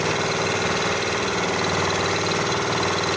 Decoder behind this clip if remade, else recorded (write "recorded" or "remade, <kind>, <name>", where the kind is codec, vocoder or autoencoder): recorded